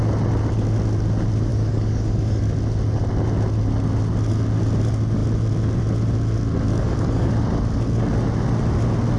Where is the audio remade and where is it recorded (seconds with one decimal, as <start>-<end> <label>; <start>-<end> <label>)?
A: 0.0-1.5 recorded; 1.5-2.4 remade; 2.4-6.7 recorded; 6.7-7.3 remade; 7.3-9.2 recorded